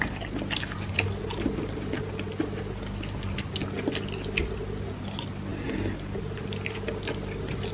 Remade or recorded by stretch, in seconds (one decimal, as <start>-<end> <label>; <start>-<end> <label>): 0.0-7.7 recorded